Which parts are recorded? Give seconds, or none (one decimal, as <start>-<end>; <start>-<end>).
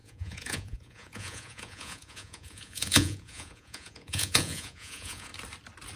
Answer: 5.3-6.0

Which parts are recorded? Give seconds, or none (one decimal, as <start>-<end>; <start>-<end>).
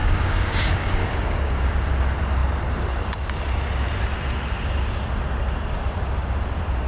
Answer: 1.9-6.9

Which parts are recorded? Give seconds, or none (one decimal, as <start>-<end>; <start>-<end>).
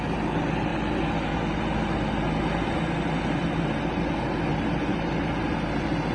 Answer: 0.0-6.1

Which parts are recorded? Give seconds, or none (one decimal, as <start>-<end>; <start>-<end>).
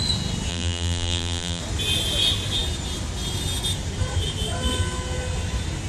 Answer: 0.0-0.5; 1.6-5.9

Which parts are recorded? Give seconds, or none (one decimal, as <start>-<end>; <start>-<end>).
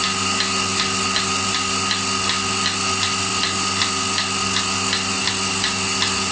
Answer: 0.0-6.3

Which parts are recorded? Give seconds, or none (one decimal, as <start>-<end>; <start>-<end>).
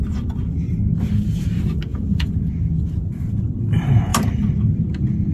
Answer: 0.0-1.9; 2.4-5.3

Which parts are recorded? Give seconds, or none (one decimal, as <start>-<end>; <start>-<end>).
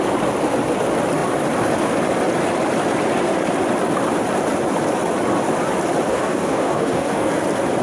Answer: 0.0-6.1; 7.3-7.8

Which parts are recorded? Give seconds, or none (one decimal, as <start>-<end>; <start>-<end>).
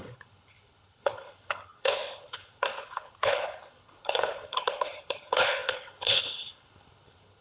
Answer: none